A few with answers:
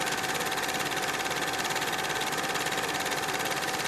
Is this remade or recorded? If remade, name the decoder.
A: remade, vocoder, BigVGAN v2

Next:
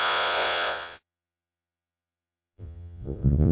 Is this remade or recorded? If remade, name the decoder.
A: remade, vocoder, Vocos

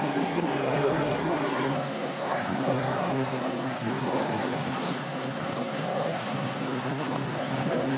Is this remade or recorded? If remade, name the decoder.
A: remade, codec, SNAC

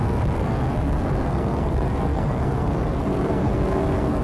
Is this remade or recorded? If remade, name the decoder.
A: remade, codec, SNAC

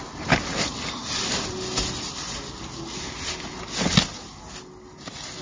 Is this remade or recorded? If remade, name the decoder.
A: recorded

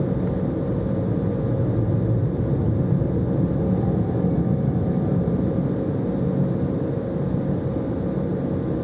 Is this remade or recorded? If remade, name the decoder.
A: recorded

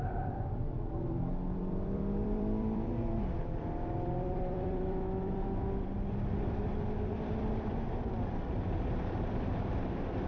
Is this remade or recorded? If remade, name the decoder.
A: remade, vocoder, BigVGAN v2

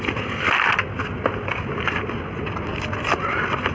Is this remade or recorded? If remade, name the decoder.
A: recorded